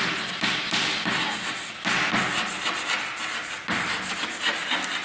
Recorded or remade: recorded